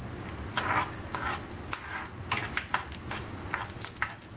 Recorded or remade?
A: recorded